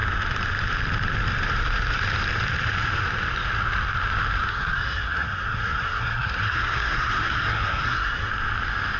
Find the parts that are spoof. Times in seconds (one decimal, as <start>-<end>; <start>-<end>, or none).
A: 4.5-8.3